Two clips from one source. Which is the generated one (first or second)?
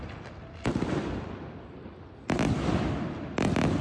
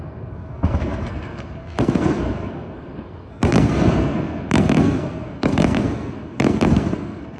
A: second